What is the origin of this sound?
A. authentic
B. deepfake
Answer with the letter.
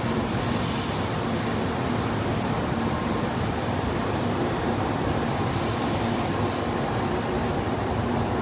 B